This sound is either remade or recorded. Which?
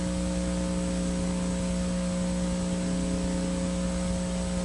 recorded